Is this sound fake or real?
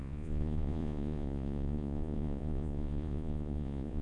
fake